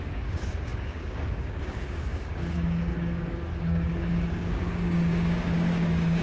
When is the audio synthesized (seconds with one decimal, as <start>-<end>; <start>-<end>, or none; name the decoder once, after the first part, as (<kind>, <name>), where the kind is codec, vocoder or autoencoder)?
0.0-6.2 (codec, DAC)